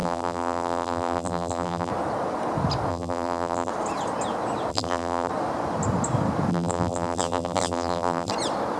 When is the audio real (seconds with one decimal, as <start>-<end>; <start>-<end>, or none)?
1.9-2.9; 3.7-4.7; 5.3-6.5; 8.3-8.8